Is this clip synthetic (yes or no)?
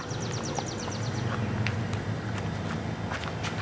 no